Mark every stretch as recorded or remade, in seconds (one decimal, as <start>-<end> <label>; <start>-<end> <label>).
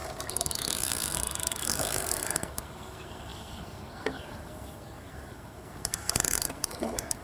0.0-7.2 remade